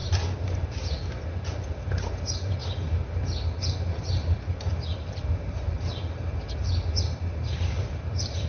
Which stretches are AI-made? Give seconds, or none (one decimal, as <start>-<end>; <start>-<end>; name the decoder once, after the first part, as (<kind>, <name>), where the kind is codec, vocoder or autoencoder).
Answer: 0.0-2.6 (vocoder, BigVGAN v2); 4.0-8.5